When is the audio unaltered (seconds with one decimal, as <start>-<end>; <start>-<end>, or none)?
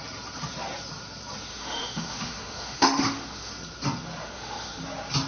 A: 0.0-1.5; 3.5-4.2; 4.8-5.3